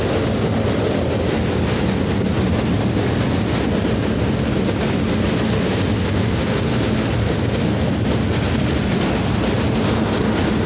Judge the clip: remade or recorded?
recorded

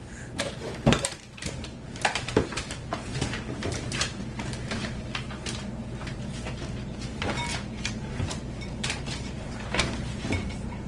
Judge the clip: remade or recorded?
remade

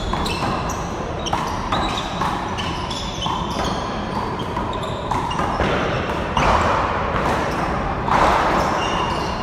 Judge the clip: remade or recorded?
remade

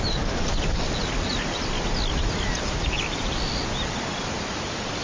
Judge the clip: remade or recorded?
recorded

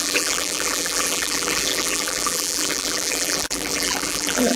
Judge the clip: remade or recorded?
remade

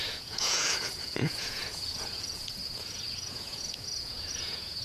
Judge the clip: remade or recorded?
remade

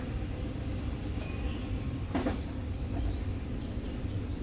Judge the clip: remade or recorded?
recorded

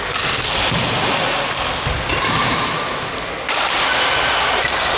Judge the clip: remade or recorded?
recorded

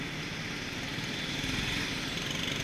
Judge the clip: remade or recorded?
recorded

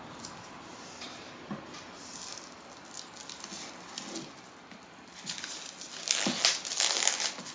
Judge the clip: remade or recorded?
recorded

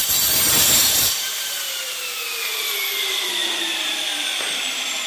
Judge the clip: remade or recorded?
remade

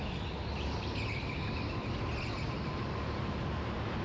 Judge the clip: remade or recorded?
recorded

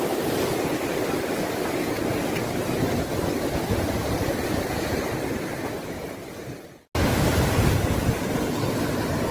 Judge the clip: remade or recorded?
recorded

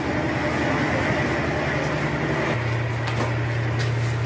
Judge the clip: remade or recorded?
recorded